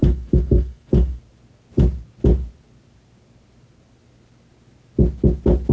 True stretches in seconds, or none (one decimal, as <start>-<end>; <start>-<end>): 1.2-5.7